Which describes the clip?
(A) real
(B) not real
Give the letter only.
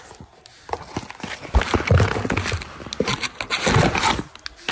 A